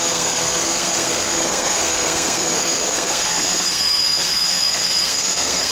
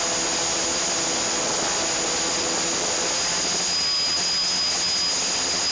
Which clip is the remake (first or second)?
first